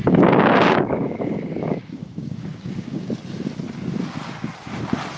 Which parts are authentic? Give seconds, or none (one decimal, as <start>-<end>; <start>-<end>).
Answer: 3.1-5.2